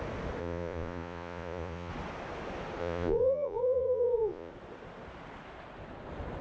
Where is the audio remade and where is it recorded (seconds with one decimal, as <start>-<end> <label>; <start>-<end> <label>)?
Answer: 0.0-0.4 recorded; 0.4-1.9 remade; 1.9-2.8 recorded; 2.8-4.5 remade; 4.5-6.4 recorded